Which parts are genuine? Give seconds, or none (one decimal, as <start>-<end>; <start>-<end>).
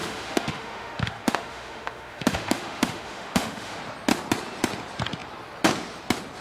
3.8-6.4